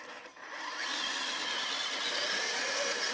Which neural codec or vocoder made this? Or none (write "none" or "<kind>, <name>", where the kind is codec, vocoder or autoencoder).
none